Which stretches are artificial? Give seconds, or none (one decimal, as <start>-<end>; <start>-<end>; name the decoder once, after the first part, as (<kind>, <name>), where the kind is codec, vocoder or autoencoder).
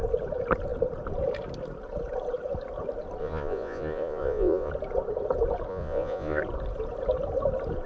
3.2-4.7 (vocoder, Vocos); 5.7-6.4